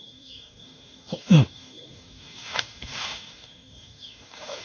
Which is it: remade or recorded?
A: remade